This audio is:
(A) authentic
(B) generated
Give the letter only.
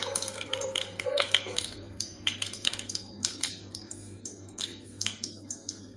B